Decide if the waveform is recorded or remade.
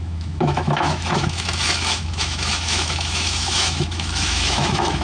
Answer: remade